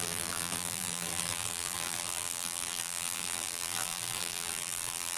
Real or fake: fake